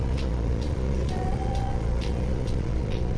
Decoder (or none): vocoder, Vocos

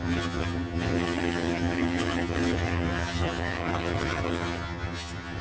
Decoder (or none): vocoder, HiFi-GAN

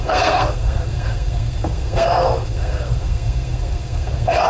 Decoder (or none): codec, SNAC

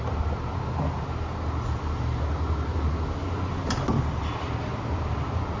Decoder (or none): none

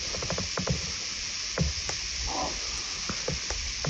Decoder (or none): none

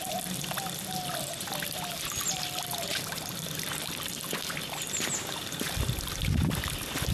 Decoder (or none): vocoder, BigVGAN v2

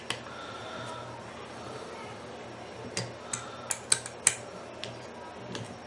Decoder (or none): none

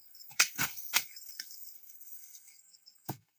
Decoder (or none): codec, SNAC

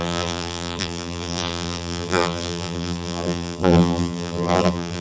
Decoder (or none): vocoder, BigVGAN v2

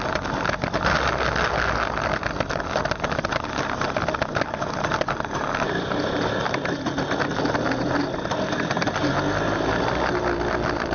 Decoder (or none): none